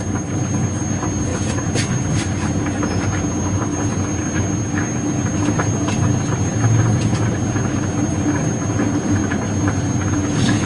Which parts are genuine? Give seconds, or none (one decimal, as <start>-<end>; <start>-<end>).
0.0-10.7

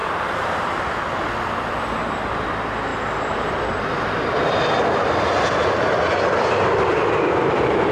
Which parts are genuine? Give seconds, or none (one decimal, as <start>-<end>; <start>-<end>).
0.0-7.9

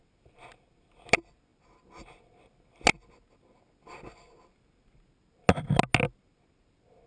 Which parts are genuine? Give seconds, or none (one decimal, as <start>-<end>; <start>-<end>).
0.0-7.1

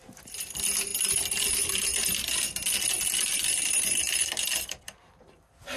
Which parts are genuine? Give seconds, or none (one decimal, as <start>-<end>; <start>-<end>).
0.0-5.8

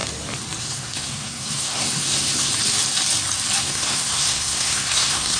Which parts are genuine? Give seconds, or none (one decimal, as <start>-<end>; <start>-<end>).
0.0-0.6; 2.5-3.6